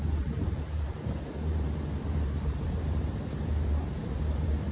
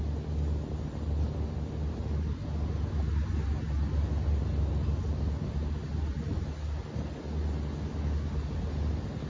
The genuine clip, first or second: second